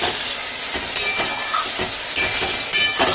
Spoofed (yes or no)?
no